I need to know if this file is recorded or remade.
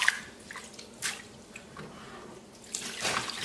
recorded